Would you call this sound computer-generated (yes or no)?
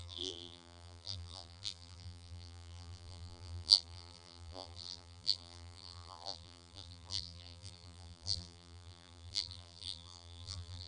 yes